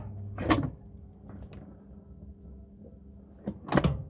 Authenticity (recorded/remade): recorded